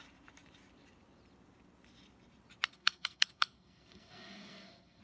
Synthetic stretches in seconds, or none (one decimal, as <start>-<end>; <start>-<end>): 2.7-5.0